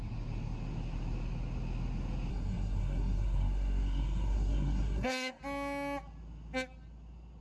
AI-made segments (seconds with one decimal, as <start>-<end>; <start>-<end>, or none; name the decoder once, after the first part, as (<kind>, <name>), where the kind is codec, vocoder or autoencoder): 2.3-5.4 (codec, SNAC)